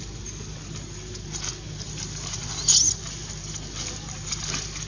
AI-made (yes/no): no